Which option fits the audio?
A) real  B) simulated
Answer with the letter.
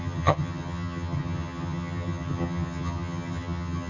B